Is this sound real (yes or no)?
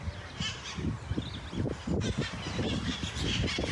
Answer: yes